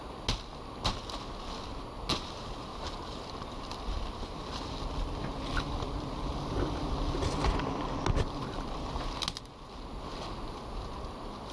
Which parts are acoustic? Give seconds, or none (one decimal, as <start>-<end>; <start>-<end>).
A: 0.0-2.7; 3.3-11.5